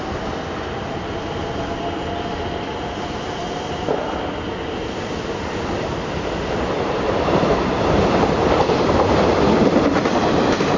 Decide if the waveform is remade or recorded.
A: remade